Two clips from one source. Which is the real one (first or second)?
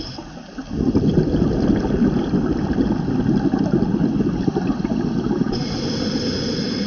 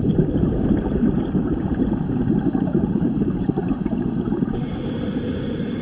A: first